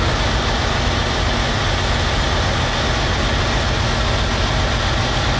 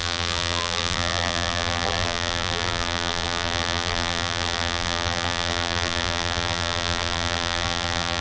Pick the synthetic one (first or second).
second